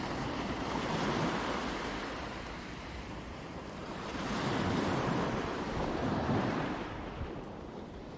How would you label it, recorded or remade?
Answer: remade